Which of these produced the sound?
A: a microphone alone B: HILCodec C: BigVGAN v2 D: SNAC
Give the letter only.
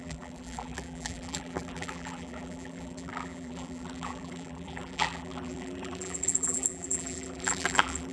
C